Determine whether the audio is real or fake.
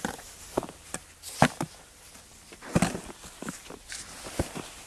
real